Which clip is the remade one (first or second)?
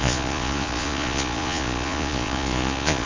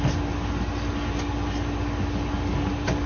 first